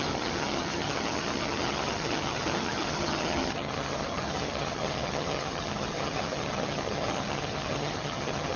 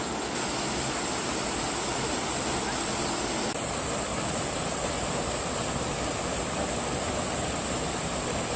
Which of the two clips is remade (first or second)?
first